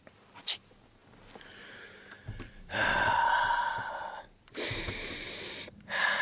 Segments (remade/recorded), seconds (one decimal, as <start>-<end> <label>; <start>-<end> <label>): 0.0-6.2 recorded